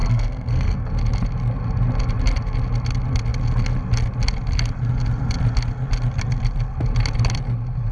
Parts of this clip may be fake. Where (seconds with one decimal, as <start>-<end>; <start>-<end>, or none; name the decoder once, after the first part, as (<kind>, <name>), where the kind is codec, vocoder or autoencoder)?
0.0-0.9 (codec, SNAC)